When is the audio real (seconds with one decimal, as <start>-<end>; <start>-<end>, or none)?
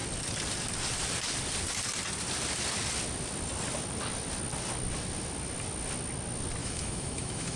0.0-6.6